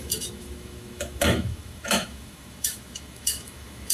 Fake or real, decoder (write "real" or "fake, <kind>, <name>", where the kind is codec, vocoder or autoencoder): fake, autoencoder, DAC-VAE